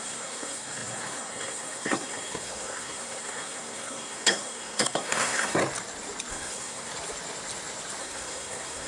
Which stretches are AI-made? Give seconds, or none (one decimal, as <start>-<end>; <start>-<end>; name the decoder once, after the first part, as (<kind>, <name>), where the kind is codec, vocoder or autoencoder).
0.0-5.6 (codec, SNAC); 6.3-6.9; 8.0-8.9